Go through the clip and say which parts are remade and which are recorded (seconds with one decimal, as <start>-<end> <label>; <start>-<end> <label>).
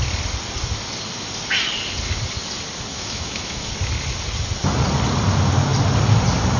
0.0-2.9 recorded; 2.9-3.7 remade; 3.7-6.6 recorded